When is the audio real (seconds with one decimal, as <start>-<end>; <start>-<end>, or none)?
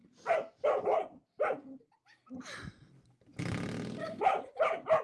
1.4-4.0